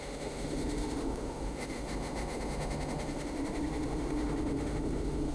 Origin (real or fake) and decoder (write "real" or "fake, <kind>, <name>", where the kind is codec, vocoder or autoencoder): fake, autoencoder, DAC-VAE